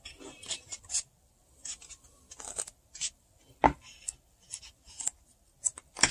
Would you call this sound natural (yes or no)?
yes